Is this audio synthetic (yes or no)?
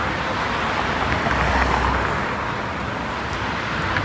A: no